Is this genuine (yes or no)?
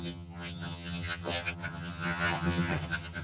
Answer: no